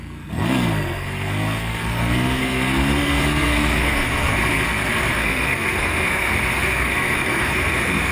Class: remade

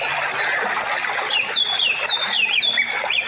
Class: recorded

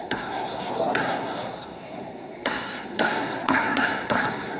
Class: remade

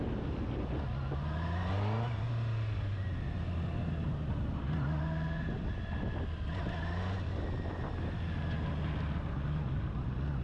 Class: recorded